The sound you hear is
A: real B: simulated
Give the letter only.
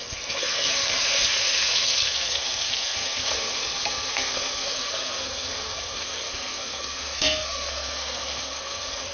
B